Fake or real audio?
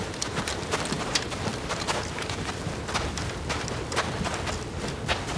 real